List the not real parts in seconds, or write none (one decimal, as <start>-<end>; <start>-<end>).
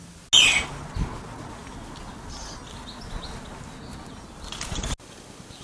none